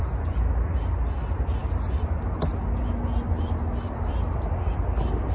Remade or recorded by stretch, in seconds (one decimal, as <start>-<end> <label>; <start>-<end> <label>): 0.0-5.3 recorded